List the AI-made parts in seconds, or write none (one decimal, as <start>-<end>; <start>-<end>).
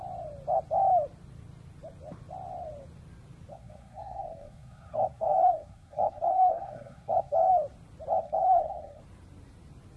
3.5-7.5; 8.1-9.0